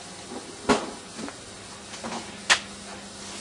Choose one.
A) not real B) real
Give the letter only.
B